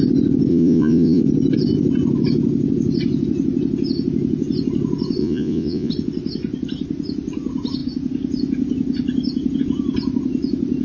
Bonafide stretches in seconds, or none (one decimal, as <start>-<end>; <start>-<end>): 0.0-0.5; 1.2-5.2; 5.9-10.8